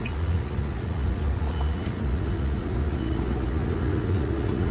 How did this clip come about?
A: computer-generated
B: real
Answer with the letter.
A